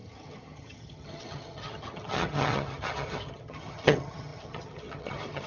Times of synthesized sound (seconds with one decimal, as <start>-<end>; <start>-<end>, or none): 0.0-5.5